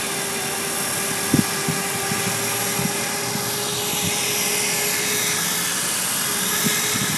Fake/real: real